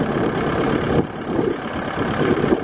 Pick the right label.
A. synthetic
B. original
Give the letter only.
B